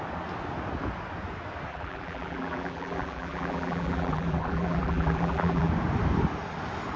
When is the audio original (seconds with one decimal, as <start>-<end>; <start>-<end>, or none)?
0.0-1.7; 5.7-7.0